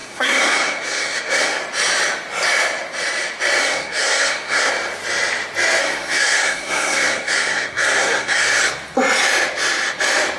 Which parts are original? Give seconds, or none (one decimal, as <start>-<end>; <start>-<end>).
1.6-3.6; 4.7-5.8; 8.6-10.4